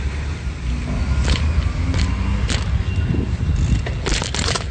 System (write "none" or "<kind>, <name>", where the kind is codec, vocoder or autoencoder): none